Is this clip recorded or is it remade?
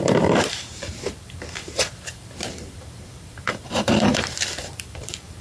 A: remade